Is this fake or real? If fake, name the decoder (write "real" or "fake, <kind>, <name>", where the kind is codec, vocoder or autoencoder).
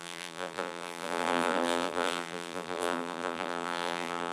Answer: fake, vocoder, BigVGAN v2